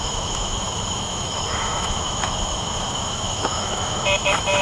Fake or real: fake